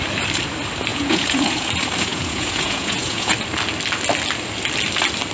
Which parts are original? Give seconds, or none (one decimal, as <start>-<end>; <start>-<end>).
0.0-0.9; 1.7-2.1; 3.3-5.3